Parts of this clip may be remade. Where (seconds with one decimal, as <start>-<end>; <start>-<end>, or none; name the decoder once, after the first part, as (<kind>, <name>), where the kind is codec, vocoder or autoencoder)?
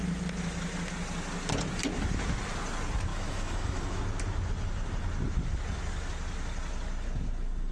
3.1-4.0 (autoencoder, DAC-VAE)